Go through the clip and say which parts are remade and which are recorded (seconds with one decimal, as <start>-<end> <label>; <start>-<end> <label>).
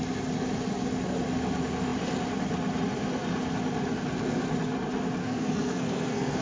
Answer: 0.0-5.2 recorded; 5.2-6.4 remade